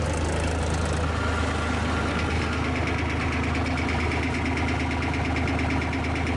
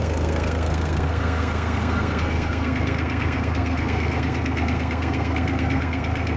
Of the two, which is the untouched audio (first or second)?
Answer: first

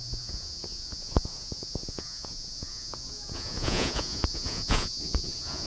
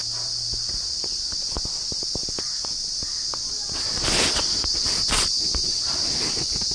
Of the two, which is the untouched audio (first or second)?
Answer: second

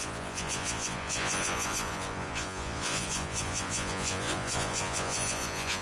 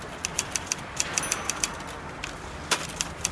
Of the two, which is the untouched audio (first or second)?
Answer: second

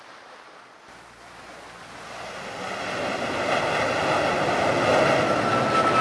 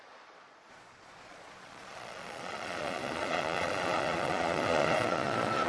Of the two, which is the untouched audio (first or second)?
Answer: first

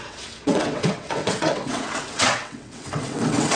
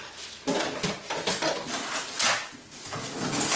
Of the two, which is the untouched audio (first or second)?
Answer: second